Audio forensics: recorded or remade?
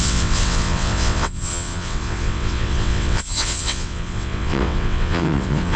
remade